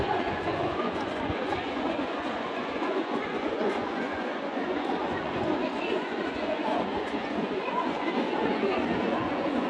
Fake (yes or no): yes